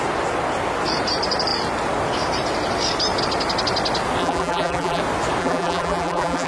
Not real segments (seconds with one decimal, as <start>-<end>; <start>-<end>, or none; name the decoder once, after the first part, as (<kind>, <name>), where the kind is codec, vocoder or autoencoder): 4.2-5.0 (vocoder, BigVGAN v2); 5.4-6.5